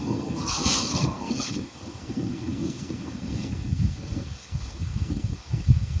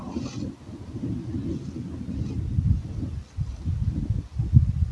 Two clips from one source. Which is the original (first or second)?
second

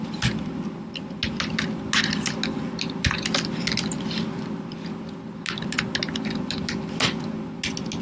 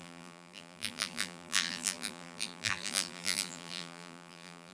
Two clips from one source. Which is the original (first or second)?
first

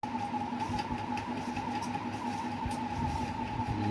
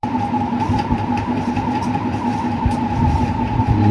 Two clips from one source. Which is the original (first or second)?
first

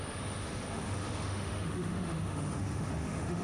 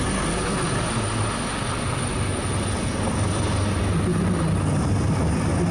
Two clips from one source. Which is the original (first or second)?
second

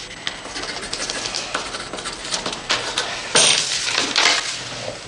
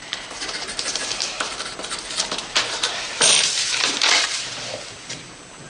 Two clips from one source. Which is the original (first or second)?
first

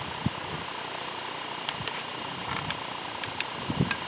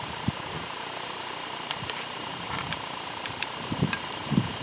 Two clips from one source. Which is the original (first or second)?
first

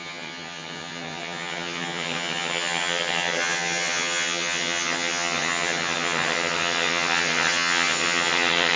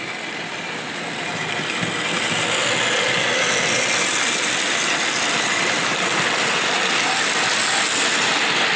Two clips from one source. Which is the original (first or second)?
second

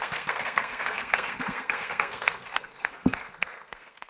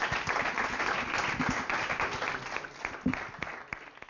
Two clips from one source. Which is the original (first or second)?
second